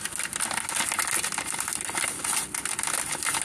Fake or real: real